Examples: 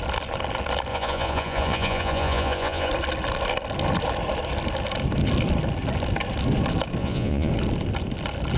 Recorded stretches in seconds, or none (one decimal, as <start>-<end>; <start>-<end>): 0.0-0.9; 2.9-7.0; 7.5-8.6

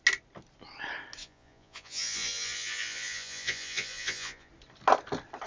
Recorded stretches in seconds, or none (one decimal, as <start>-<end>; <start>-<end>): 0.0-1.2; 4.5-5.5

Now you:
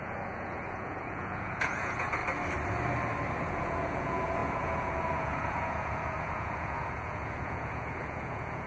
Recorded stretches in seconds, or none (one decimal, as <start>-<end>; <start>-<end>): 2.2-3.4

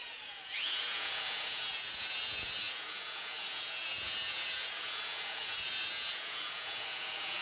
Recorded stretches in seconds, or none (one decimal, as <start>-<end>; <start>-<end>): none

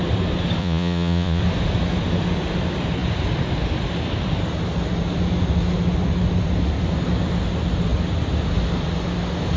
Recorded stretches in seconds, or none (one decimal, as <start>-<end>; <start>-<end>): 0.0-0.6; 1.4-9.6